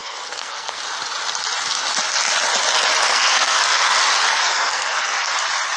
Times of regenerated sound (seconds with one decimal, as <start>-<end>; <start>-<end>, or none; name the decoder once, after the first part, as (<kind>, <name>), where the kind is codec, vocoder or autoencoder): 0.0-0.8 (codec, SNAC); 3.1-3.9; 4.3-5.3